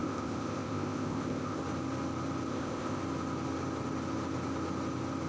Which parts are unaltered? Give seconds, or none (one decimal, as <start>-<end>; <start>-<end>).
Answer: 1.6-2.5; 3.0-5.3